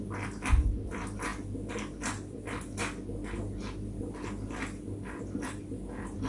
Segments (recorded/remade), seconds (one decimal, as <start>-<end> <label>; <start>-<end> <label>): 0.0-6.3 recorded